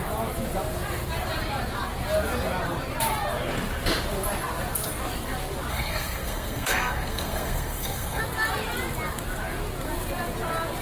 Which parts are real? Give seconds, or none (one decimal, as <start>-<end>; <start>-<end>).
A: 0.0-5.7; 8.2-10.8